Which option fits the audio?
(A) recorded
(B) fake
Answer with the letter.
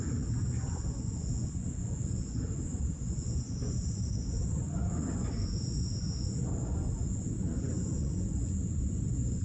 B